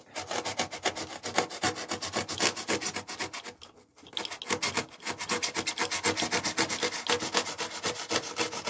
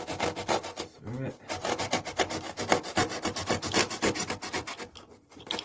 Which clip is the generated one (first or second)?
second